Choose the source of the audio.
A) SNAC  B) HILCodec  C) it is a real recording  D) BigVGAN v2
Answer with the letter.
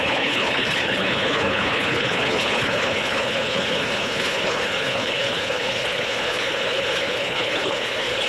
B